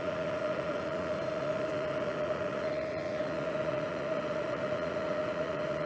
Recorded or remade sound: remade